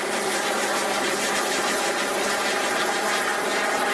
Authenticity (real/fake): real